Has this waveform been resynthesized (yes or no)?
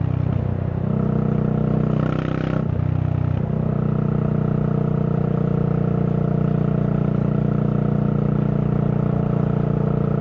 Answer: no